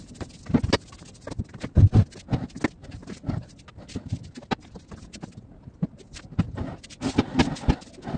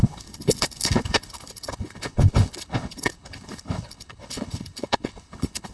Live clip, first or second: first